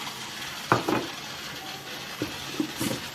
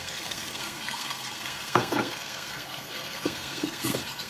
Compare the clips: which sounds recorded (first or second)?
first